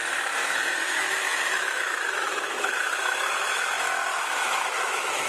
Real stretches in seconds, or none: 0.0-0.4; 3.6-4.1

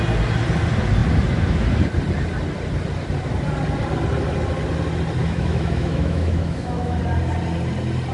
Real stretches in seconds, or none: 0.0-5.2; 7.0-8.1

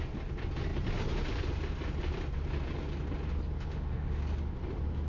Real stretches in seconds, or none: 0.0-3.7; 4.2-5.1

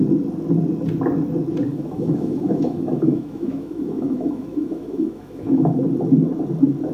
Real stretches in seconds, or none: 0.0-1.7; 5.7-6.9

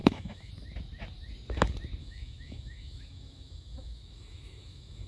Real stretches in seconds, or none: 0.5-2.0

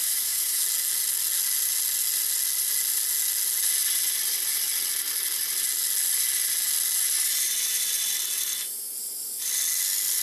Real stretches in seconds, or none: 0.6-10.2